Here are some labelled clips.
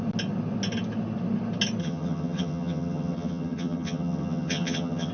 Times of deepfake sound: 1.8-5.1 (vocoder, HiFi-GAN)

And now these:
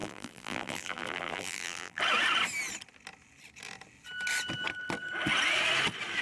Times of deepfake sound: 0.0-2.0 (vocoder, BigVGAN v2)

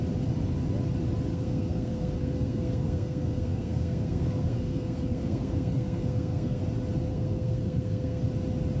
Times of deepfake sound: 1.3-6.6 (codec, SNAC); 7.1-8.2